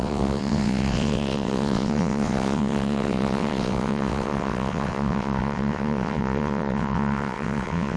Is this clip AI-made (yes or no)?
yes